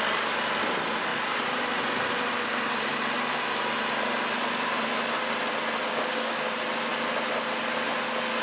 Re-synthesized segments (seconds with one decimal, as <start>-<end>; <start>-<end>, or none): 5.9-6.5

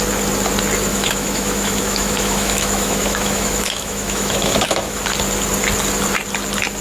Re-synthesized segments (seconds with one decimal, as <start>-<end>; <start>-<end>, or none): 0.9-5.0

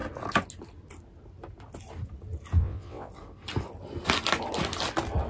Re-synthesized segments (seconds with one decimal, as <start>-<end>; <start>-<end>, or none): 2.6-3.1

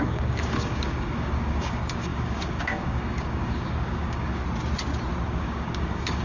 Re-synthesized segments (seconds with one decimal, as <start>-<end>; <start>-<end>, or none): 0.0-4.4; 5.3-6.2

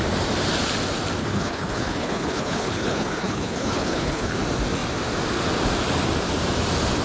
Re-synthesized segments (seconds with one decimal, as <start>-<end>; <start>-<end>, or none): 1.2-4.3